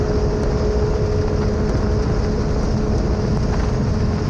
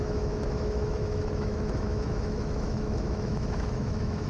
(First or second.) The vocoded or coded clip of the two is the second